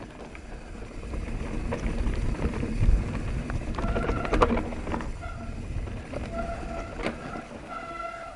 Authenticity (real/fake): real